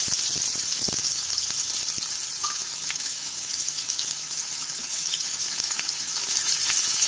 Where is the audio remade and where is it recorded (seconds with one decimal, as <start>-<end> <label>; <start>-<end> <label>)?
0.0-0.7 recorded; 0.7-1.7 remade; 1.7-2.4 recorded; 2.4-7.1 remade